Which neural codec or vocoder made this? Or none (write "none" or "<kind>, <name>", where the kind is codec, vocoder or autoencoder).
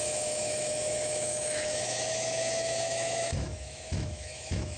autoencoder, DAC-VAE